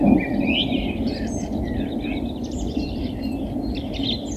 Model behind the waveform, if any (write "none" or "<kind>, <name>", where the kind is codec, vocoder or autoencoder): vocoder, BigVGAN v2